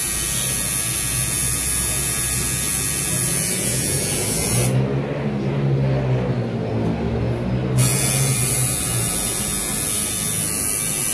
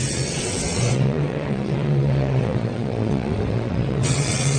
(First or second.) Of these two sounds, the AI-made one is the second